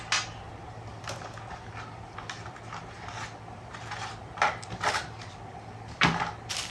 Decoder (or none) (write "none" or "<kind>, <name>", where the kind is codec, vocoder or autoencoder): none